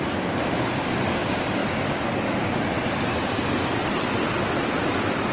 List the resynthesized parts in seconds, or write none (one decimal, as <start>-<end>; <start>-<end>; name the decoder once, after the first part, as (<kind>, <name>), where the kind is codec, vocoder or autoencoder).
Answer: 3.8-5.3 (vocoder, BigVGAN v2)